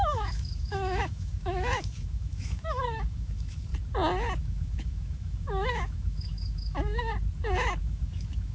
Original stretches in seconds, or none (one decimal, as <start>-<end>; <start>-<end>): 3.7-4.4; 7.1-7.8